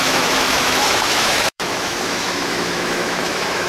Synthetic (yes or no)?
yes